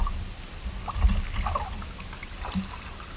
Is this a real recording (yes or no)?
yes